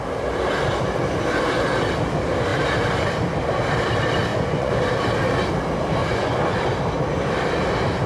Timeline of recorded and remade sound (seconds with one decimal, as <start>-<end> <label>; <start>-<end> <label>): 0.0-4.3 recorded; 4.3-4.9 remade; 4.9-6.0 recorded; 6.0-6.6 remade; 6.6-8.1 recorded